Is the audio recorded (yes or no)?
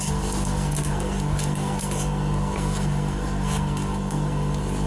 no